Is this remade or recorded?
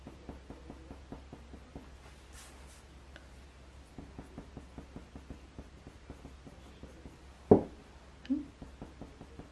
recorded